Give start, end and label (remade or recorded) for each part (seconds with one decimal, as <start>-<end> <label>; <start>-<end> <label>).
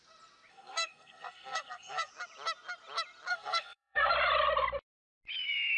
0.0-0.5 recorded; 0.5-2.1 remade; 2.1-3.3 recorded; 3.3-4.1 remade; 4.1-5.8 recorded